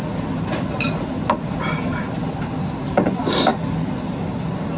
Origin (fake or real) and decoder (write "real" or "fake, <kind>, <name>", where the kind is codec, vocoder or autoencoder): real